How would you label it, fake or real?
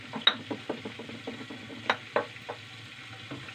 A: real